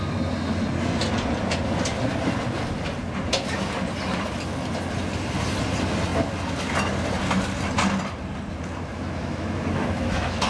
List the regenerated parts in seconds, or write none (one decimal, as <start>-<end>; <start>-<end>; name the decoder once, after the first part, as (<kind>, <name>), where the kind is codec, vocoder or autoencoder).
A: 8.9-10.5 (autoencoder, DAC-VAE)